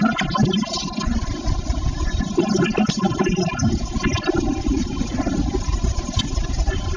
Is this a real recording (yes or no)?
yes